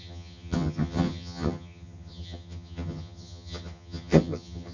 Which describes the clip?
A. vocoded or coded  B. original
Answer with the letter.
A